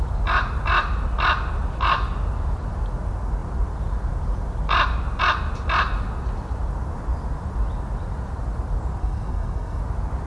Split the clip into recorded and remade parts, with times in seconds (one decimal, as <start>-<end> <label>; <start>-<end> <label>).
0.0-9.0 recorded; 9.0-9.8 remade; 9.8-10.3 recorded